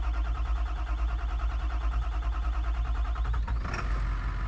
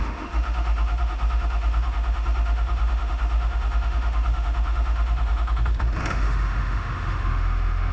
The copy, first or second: second